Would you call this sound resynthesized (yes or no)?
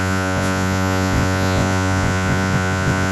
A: yes